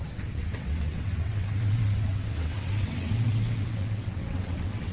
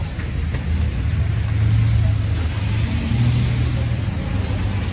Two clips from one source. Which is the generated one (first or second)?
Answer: first